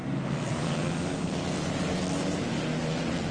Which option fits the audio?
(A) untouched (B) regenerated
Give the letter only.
A